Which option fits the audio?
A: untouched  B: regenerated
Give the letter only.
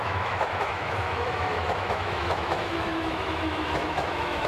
B